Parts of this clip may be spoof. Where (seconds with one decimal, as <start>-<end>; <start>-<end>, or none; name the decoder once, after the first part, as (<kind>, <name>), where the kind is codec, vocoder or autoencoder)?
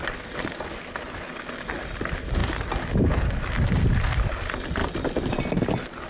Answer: none